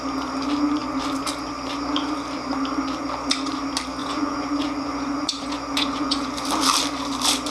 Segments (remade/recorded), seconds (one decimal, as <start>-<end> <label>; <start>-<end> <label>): 0.0-4.0 recorded; 4.0-6.3 remade; 6.3-7.5 recorded

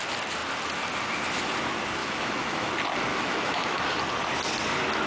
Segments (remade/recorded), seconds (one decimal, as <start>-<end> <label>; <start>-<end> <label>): 0.0-2.0 recorded; 2.0-2.7 remade; 2.7-3.1 recorded; 3.1-3.8 remade; 3.8-5.1 recorded

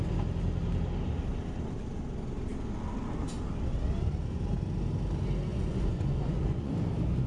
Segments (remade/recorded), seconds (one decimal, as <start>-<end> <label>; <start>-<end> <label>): 0.0-5.5 recorded; 5.5-6.7 remade; 6.7-7.3 recorded

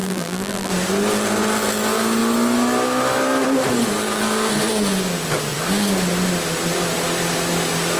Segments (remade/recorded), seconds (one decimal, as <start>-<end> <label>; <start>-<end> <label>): 0.0-0.7 remade; 0.7-8.0 recorded

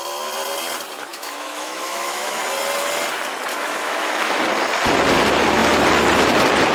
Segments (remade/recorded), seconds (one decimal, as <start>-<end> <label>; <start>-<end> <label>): 0.0-1.1 recorded; 1.1-2.4 remade; 2.4-3.5 recorded; 3.5-4.4 remade; 4.4-6.7 recorded